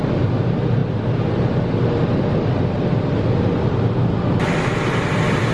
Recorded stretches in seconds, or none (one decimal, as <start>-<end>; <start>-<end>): 0.0-5.5